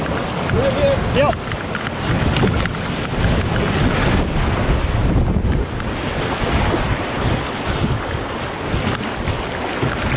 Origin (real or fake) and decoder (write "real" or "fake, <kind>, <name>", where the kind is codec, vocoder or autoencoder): real